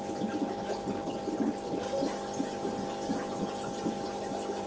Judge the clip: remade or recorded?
recorded